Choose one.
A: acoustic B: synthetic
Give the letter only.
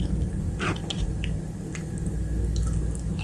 A